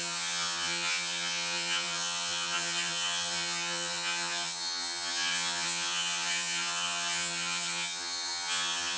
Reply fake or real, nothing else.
fake